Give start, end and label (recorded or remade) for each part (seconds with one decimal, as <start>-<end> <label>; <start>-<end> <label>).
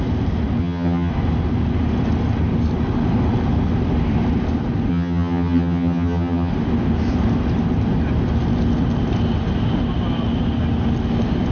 0.0-0.6 recorded; 0.6-1.1 remade; 1.1-4.9 recorded; 4.9-6.5 remade; 6.5-11.5 recorded